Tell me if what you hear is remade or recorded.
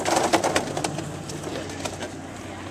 recorded